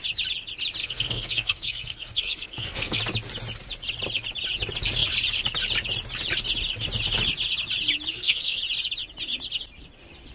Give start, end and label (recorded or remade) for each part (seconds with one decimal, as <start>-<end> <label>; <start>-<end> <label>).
0.0-0.8 recorded; 0.8-3.0 remade; 3.0-8.1 recorded; 8.1-8.6 remade; 8.6-10.3 recorded